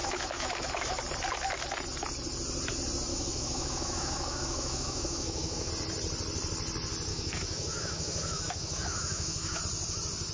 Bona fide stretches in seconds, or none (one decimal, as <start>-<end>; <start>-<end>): 1.0-3.1; 5.7-7.1; 9.6-10.3

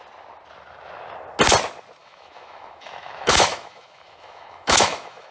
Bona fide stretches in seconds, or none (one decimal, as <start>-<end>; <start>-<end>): 0.0-2.0

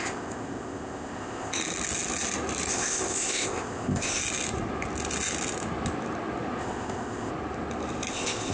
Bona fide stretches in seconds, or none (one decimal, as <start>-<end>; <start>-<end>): 1.6-2.7; 4.2-6.6; 7.3-8.1